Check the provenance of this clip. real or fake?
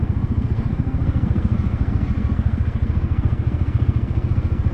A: fake